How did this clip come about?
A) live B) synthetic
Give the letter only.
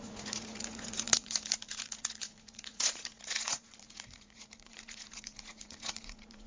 B